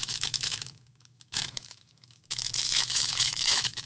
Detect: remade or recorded remade